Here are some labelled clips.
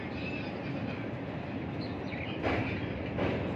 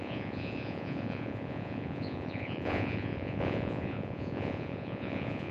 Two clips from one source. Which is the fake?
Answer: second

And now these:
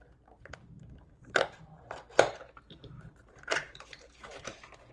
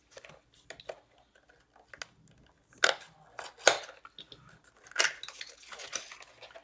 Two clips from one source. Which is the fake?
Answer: first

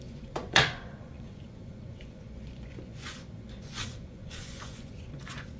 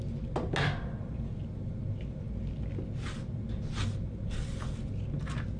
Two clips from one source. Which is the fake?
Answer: first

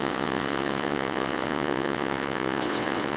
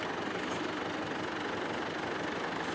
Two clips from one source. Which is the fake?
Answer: first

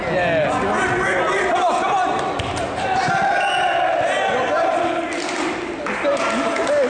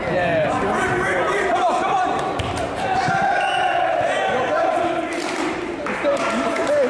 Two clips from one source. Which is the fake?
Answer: second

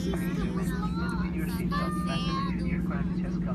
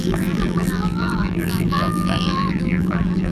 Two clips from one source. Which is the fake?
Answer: second